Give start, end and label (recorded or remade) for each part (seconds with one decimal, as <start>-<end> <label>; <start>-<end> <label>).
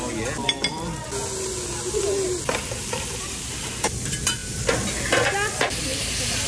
0.0-6.5 recorded